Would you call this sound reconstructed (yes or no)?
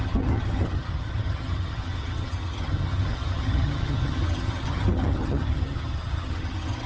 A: yes